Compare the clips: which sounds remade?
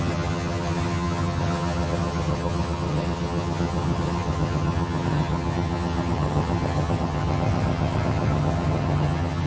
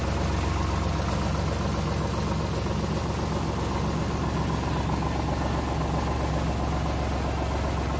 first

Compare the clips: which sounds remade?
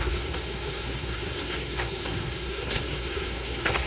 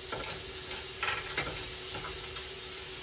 first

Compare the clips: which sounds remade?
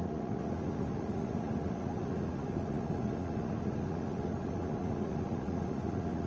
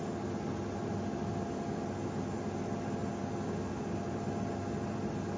first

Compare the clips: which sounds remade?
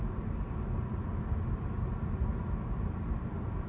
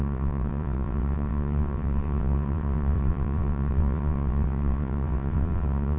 second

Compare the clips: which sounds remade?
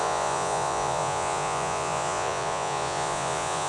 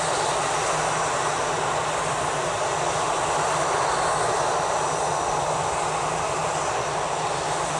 first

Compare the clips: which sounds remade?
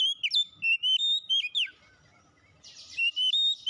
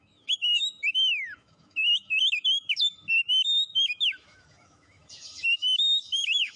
second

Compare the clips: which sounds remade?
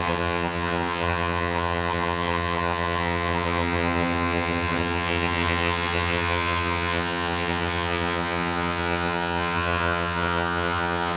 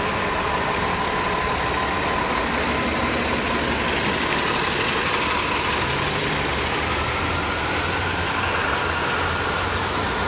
first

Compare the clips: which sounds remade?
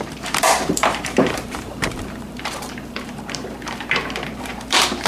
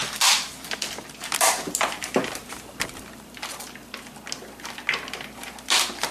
first